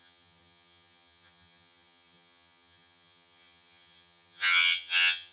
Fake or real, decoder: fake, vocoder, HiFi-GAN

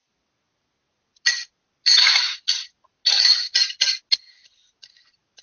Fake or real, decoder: real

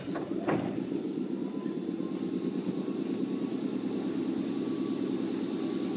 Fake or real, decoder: real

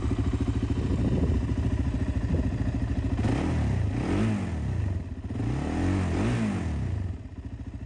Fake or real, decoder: real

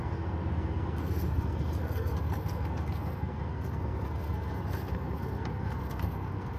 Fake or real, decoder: fake, codec, SNAC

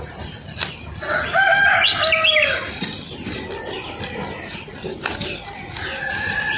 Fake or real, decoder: real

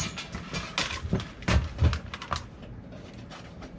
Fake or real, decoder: real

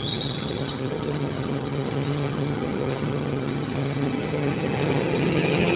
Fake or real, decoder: fake, vocoder, HiFi-GAN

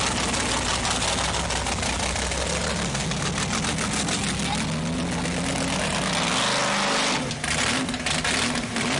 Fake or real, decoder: real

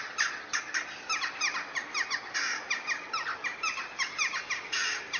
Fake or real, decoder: real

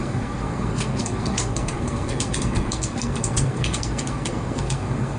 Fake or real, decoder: fake, codec, SNAC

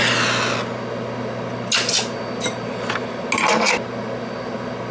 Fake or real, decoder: real